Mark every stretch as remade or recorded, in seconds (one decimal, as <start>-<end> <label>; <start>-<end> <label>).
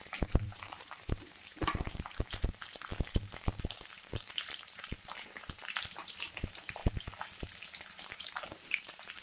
0.0-2.9 remade; 2.9-3.7 recorded; 3.7-6.8 remade; 6.8-8.0 recorded; 8.0-9.2 remade